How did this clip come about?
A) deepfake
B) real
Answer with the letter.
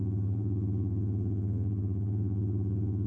A